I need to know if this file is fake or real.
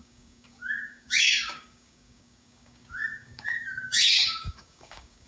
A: fake